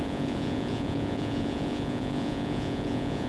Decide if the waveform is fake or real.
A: fake